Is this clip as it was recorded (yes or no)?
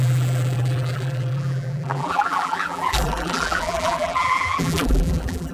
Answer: no